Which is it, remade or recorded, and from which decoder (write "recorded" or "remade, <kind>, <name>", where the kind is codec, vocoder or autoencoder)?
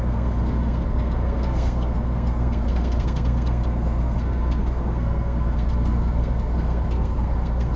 remade, codec, SNAC